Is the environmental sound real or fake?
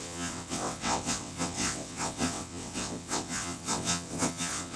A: fake